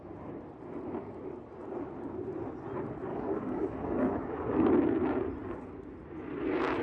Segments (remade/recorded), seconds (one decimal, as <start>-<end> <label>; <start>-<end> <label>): 0.0-3.1 recorded; 3.1-4.7 remade; 4.7-6.8 recorded